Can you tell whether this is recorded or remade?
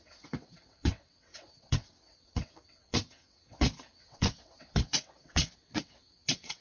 remade